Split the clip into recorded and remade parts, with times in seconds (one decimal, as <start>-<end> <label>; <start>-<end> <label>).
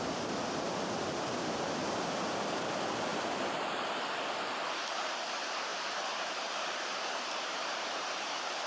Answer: 0.0-5.7 recorded; 5.7-8.2 remade; 8.2-8.7 recorded